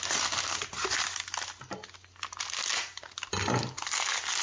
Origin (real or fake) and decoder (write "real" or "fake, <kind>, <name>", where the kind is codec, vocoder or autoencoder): real